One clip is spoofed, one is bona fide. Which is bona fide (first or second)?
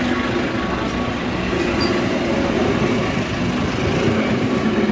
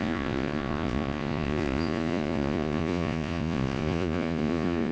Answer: first